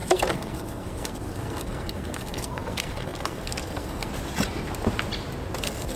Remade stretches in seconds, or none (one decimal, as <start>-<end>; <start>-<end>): 0.0-4.1; 5.6-6.0